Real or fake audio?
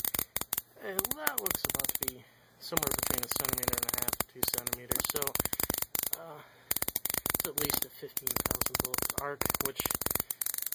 real